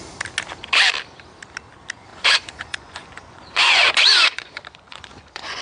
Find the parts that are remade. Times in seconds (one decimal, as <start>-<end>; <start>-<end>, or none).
2.1-5.6